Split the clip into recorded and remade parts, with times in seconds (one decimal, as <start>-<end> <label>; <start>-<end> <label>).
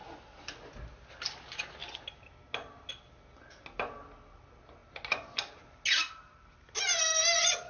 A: 0.0-7.7 recorded